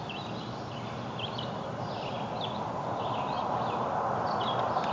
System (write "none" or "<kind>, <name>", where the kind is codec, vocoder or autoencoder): none